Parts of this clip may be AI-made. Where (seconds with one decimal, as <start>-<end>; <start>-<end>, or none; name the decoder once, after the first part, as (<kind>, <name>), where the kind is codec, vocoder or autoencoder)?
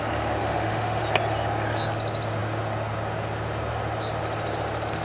0.4-1.0 (autoencoder, DAC-VAE)